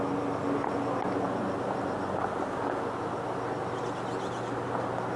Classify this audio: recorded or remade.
recorded